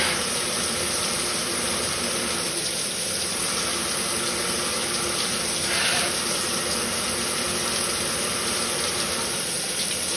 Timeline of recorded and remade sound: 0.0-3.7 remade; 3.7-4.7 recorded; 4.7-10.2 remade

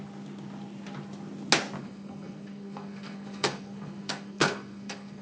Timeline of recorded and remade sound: 0.0-1.8 recorded; 1.8-5.2 remade

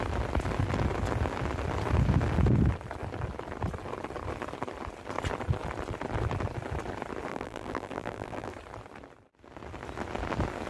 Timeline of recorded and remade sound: 0.0-7.3 recorded; 7.3-8.5 remade; 8.5-10.7 recorded

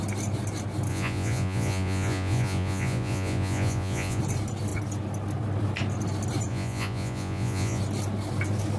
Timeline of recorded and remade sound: 0.0-0.9 recorded; 0.9-4.2 remade; 4.2-6.5 recorded; 6.5-7.8 remade; 7.8-8.8 recorded